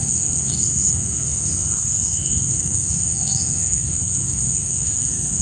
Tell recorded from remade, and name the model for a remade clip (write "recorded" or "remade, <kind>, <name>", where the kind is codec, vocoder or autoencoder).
remade, codec, SNAC